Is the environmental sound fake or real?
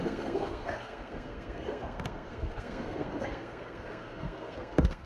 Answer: fake